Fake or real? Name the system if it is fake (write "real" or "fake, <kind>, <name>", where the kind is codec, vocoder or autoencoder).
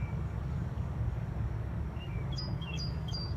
fake, codec, DAC